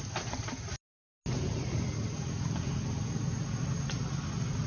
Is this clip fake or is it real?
real